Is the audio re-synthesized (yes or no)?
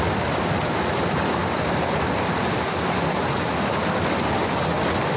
no